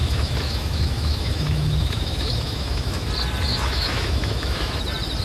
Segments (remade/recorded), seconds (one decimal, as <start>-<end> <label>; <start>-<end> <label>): 0.0-3.1 remade; 3.1-3.5 recorded; 3.5-4.8 remade; 4.8-5.2 recorded